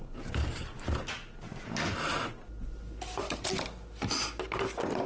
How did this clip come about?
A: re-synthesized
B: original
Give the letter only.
B